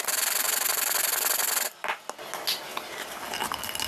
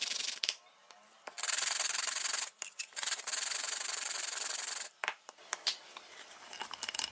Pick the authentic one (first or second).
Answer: first